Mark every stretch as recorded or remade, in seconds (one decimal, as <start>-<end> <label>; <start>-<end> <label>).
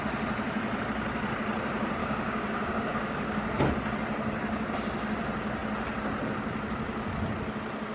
0.0-2.0 recorded; 2.0-3.6 remade; 3.6-7.9 recorded